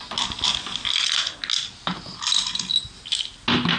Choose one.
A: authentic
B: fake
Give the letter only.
A